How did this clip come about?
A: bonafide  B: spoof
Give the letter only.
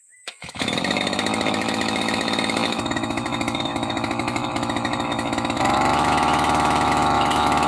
B